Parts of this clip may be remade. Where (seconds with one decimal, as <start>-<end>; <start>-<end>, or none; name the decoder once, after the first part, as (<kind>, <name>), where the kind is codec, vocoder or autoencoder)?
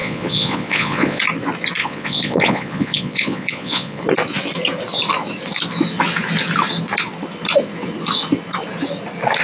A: 0.0-1.2 (vocoder, Vocos); 1.8-4.0